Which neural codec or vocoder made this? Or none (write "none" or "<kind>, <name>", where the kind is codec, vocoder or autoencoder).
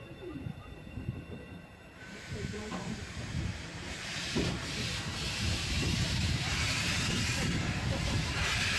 vocoder, BigVGAN v2